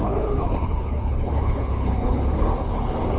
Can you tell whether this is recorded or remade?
remade